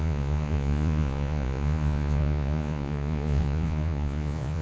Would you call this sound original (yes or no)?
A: no